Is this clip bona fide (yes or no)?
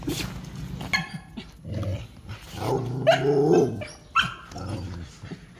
yes